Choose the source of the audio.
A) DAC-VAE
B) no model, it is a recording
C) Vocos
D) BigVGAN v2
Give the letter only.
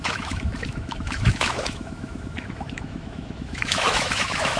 A